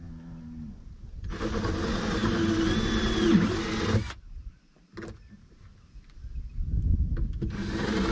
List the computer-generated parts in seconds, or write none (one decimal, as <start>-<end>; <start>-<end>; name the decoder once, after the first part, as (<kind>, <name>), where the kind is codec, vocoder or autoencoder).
none